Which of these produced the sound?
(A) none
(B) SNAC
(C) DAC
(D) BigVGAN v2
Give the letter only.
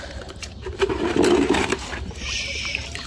D